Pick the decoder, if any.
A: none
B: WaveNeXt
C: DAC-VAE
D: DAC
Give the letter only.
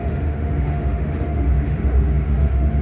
C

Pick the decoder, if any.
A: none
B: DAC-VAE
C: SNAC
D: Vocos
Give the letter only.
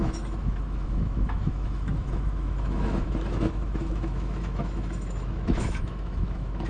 B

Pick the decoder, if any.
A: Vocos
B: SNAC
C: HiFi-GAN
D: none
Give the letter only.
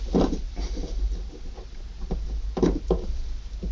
D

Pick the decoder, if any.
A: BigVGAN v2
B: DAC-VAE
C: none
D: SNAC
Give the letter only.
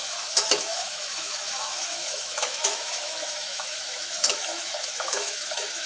B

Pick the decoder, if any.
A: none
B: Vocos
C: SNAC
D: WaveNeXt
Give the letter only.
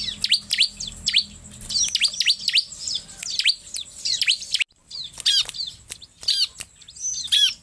A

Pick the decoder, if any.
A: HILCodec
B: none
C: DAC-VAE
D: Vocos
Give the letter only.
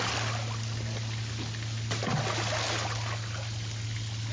B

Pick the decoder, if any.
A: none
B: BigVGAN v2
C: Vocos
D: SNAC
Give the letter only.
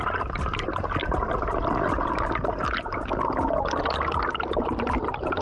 A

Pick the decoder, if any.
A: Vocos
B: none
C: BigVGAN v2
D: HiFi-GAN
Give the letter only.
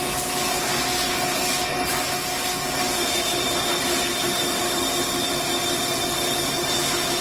B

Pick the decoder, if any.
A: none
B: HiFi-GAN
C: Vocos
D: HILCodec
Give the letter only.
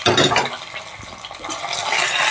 A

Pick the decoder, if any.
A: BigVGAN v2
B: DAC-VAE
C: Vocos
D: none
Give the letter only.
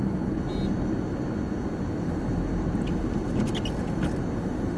D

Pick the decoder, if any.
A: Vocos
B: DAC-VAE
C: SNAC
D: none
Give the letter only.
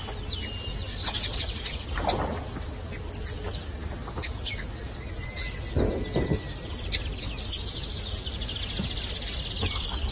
D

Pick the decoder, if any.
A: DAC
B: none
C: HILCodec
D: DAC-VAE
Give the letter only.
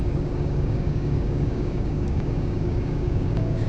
A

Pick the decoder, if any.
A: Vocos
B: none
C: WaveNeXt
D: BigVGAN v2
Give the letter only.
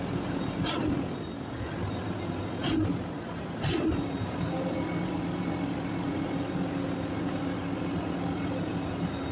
B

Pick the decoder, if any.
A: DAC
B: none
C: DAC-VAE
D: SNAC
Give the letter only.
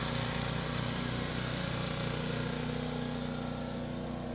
B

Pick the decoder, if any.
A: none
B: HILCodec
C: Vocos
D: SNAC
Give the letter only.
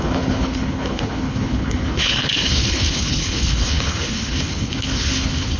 B